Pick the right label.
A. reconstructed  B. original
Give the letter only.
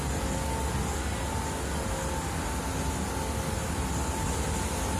B